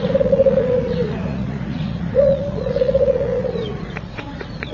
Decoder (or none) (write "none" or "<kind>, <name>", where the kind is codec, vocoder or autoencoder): vocoder, Vocos